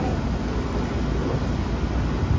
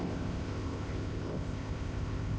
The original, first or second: first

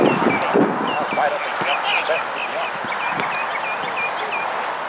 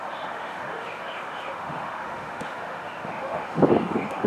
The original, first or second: first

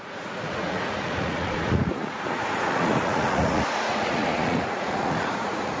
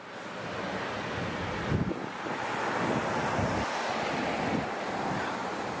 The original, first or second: second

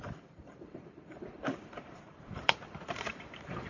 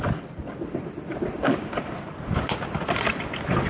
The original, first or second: second